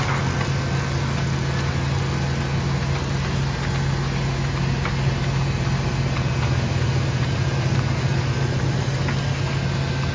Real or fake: real